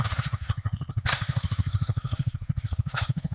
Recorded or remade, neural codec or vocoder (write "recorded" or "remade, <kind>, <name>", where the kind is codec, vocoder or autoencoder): remade, codec, SNAC